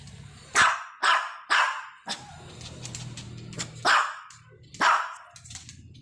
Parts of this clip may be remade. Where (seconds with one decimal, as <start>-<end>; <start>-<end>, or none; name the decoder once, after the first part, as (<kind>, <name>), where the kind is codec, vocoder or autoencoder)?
none